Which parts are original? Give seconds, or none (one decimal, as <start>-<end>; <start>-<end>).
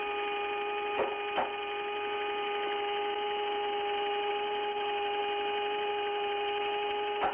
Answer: 0.0-7.3